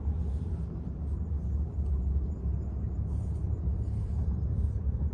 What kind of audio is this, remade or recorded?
remade